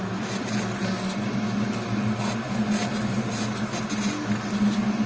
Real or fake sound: real